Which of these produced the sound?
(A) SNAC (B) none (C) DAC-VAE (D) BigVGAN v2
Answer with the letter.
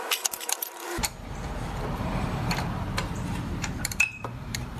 D